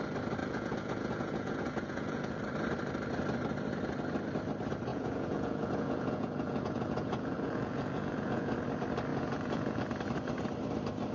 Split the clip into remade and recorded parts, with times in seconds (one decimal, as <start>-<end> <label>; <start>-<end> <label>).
0.0-0.4 recorded; 0.4-2.4 remade; 2.4-4.9 recorded; 4.9-8.5 remade; 8.5-9.1 recorded; 9.1-9.8 remade; 9.8-11.1 recorded